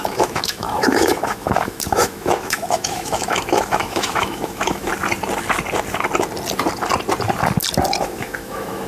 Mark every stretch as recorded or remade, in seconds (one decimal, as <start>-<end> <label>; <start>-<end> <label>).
0.0-4.9 remade; 4.9-8.0 recorded; 8.0-8.9 remade